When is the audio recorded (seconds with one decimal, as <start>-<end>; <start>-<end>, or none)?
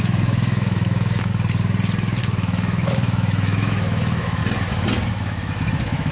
1.3-2.2; 4.4-5.1